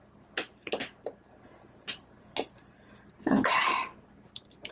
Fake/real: real